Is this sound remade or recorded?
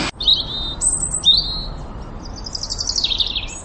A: recorded